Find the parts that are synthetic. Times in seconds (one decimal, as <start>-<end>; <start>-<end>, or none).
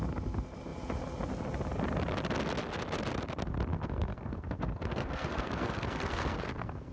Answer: 3.7-6.9